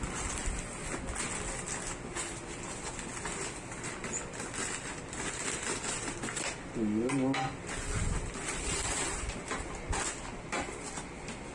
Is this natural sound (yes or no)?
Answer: yes